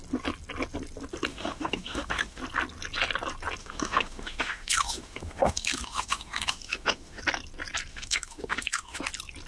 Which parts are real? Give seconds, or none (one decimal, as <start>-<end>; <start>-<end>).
0.0-1.3; 2.4-3.6; 7.2-7.9; 9.0-9.5